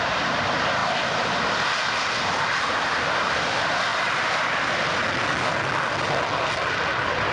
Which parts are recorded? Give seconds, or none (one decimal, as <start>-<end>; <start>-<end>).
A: 0.8-1.8; 3.9-6.0